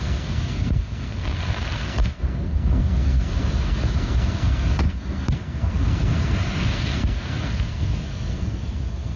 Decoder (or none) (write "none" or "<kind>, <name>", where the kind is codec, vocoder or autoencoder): codec, SNAC